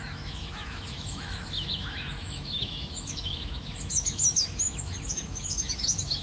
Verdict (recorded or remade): remade